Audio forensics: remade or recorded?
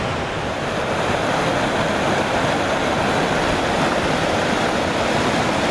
remade